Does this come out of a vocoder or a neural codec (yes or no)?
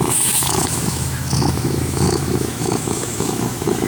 yes